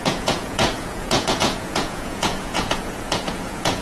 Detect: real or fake fake